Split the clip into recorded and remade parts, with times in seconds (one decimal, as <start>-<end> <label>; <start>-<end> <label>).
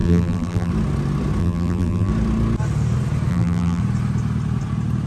0.0-0.7 remade; 0.7-1.4 recorded; 1.4-2.1 remade; 2.1-3.3 recorded; 3.3-3.8 remade; 3.8-5.1 recorded